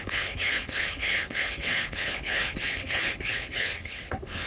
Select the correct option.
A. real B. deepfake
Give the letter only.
B